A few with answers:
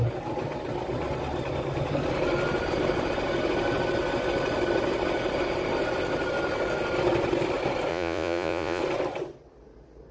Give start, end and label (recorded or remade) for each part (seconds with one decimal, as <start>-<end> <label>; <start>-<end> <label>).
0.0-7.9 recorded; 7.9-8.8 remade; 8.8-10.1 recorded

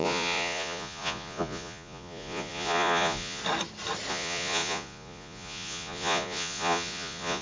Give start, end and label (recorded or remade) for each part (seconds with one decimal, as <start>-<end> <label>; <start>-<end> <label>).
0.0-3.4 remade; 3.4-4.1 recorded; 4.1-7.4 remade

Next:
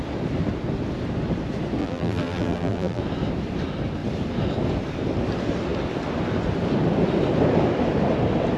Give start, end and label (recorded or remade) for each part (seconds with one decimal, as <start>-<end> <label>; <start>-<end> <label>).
0.0-1.8 recorded; 1.8-3.0 remade; 3.0-8.6 recorded

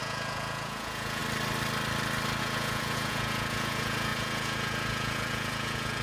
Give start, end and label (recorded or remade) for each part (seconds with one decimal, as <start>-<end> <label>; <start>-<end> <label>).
0.0-1.2 remade; 1.2-2.4 recorded; 2.4-6.0 remade

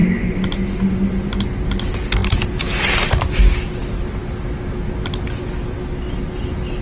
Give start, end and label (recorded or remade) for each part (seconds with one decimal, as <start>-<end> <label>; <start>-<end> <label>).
0.0-6.8 recorded

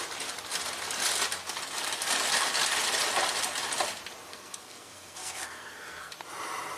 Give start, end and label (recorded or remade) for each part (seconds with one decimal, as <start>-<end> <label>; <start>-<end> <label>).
0.0-4.3 recorded; 4.3-6.1 remade; 6.1-6.8 recorded

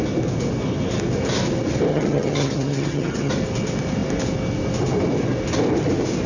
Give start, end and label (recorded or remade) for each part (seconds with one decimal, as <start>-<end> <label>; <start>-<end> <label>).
0.0-1.9 recorded; 1.9-3.3 remade; 3.3-6.3 recorded